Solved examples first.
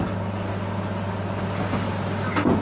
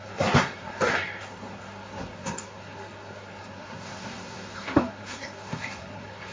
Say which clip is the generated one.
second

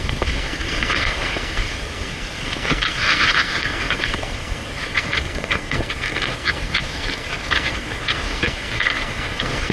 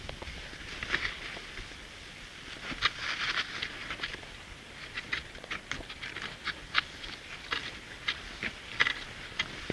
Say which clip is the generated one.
first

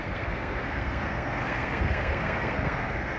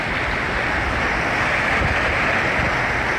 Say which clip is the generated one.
first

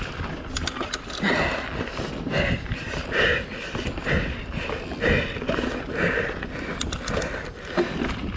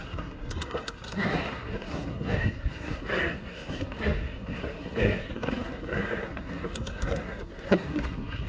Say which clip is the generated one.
second